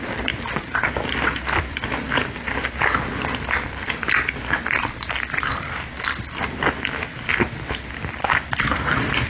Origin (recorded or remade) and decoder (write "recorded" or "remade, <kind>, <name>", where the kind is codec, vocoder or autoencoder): recorded